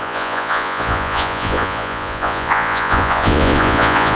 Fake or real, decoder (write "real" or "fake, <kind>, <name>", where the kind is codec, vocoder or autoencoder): fake, vocoder, Vocos